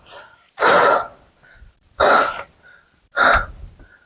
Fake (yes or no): no